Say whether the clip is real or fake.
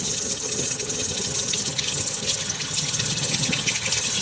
fake